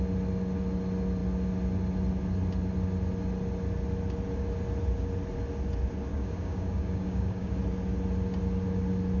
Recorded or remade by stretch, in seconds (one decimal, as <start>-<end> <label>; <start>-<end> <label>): 0.0-6.1 recorded; 6.1-7.5 remade; 7.5-9.2 recorded